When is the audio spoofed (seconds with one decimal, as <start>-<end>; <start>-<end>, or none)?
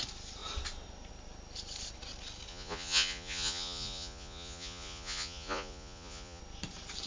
2.5-6.4